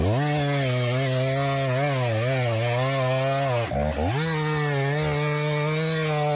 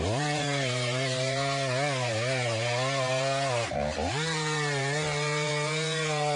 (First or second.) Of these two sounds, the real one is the first